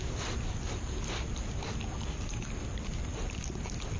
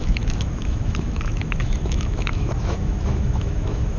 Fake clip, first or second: second